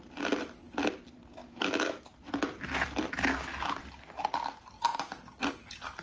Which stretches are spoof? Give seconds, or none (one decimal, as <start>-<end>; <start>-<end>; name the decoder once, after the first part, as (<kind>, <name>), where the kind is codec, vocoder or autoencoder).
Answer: 1.4-2.0 (autoencoder, DAC-VAE)